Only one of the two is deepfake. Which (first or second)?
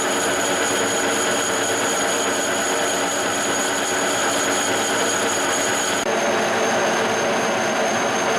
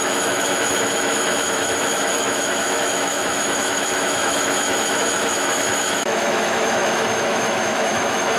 second